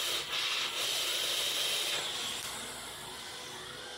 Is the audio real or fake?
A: real